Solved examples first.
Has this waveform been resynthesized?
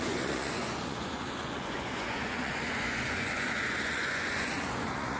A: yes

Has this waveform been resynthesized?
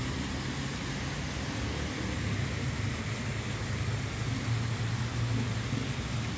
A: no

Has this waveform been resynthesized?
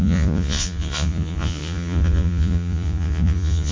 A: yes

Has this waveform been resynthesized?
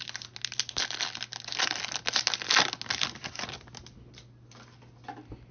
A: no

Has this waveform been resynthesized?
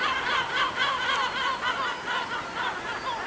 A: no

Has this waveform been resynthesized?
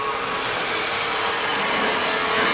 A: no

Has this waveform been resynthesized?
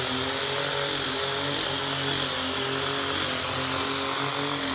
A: no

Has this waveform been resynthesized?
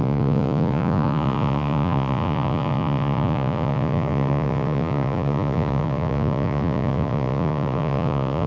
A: yes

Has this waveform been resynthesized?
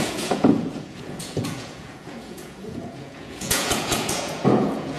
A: yes